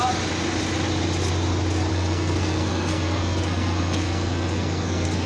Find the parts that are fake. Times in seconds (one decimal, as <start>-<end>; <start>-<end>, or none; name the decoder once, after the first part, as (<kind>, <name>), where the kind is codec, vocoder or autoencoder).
1.9-5.3 (codec, SNAC)

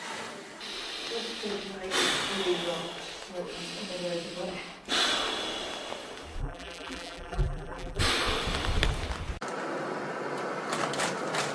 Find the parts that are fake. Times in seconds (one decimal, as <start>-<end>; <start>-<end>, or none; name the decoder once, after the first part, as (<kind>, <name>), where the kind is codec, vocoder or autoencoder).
6.4-8.0 (vocoder, BigVGAN v2)

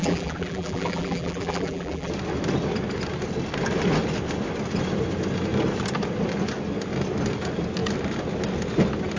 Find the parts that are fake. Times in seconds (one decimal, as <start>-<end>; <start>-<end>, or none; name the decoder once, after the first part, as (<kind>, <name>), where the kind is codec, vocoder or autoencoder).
0.0-2.1 (vocoder, BigVGAN v2)

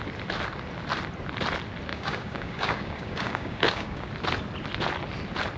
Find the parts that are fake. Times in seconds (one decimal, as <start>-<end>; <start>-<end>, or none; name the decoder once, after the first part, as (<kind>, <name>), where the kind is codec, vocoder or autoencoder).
1.9-4.1 (codec, DAC)

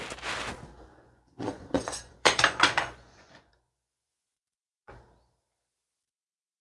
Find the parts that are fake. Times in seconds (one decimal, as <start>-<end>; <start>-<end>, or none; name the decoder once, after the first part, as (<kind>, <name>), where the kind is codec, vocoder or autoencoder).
0.9-4.9 (vocoder, Vocos)

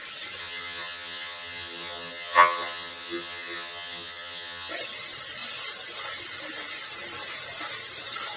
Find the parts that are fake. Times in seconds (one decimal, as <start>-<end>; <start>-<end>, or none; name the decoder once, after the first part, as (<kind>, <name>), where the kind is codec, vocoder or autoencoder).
0.4-4.7 (vocoder, HiFi-GAN)

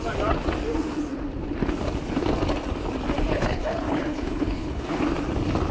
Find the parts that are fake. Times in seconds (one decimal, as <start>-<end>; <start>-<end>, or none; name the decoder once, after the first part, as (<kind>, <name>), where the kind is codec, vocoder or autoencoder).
3.3-5.0 (codec, HILCodec)

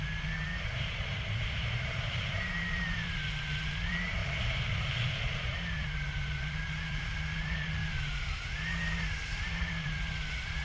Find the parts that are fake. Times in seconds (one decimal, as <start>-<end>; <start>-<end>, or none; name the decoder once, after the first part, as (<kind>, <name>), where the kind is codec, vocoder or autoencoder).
0.5-3.3 (vocoder, BigVGAN v2); 4.2-7.3; 7.8-8.4